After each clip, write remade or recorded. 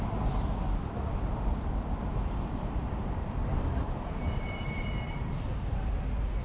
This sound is remade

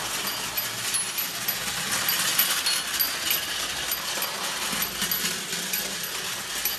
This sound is recorded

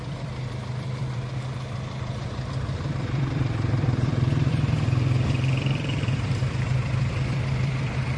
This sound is remade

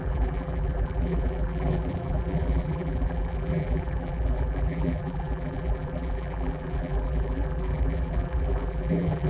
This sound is remade